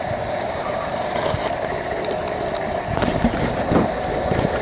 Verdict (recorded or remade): recorded